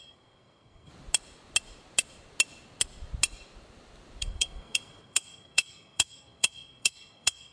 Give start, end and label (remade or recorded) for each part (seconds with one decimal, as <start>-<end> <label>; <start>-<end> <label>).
0.0-0.9 remade; 0.9-4.2 recorded; 4.2-7.5 remade